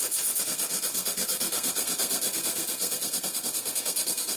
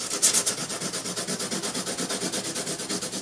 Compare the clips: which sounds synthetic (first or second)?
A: first